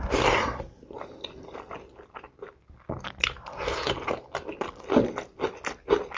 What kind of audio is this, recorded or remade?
recorded